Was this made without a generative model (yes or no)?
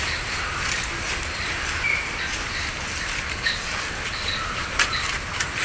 yes